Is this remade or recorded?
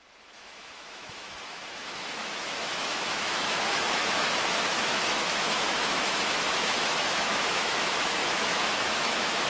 remade